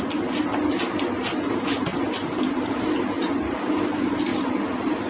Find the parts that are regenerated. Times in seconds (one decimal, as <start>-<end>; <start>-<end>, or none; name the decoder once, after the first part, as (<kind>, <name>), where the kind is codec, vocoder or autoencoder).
none